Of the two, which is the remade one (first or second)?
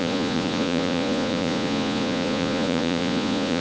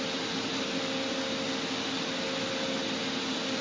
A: first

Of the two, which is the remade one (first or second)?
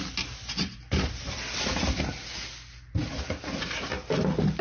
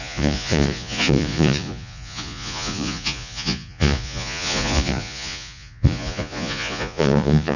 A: second